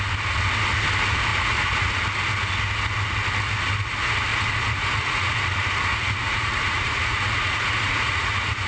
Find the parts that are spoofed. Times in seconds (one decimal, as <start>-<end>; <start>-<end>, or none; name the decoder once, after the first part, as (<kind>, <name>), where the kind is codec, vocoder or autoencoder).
1.3-2.0 (vocoder, Vocos); 4.3-5.3; 5.9-8.7